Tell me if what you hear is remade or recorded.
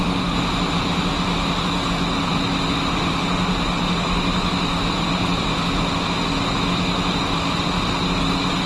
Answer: recorded